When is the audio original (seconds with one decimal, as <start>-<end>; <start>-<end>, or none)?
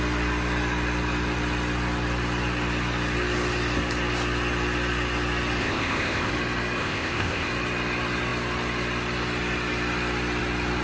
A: 0.0-5.6; 6.3-6.8; 7.5-10.8